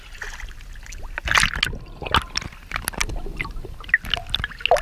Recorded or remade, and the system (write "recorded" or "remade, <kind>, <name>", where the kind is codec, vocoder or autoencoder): recorded